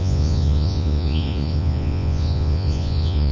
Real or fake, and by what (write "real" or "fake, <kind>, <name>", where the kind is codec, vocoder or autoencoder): fake, vocoder, Vocos